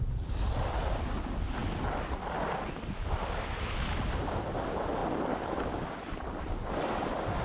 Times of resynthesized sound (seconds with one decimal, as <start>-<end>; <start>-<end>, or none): none

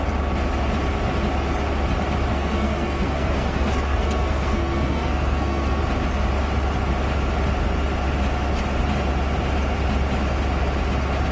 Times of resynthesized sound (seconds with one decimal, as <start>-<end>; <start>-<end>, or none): 2.3-5.8

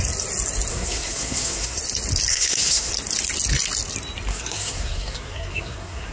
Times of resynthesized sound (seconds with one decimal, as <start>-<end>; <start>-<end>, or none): 0.7-1.8; 2.3-2.9; 4.3-6.1

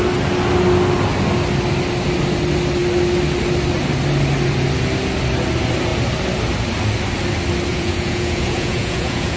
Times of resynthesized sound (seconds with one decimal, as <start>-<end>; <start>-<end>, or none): 7.7-9.4

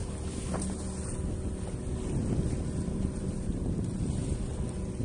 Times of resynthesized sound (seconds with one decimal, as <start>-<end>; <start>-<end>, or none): 3.0-5.0

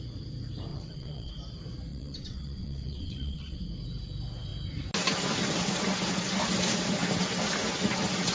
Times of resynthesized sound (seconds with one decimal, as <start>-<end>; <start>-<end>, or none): 0.7-1.3; 1.9-3.6

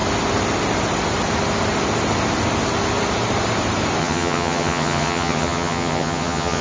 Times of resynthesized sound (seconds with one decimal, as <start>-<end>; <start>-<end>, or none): 4.0-6.6